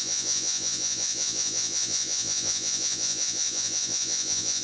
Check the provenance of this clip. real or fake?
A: fake